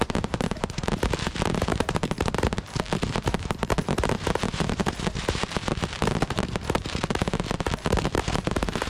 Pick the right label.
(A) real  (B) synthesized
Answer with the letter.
B